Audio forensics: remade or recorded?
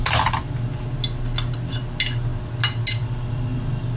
recorded